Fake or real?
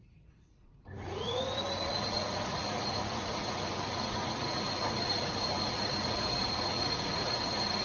fake